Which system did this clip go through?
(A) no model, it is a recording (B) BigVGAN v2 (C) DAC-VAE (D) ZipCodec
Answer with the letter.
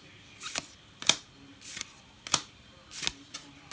A